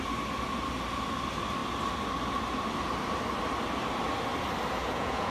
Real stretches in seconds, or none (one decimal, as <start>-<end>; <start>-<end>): 0.0-4.8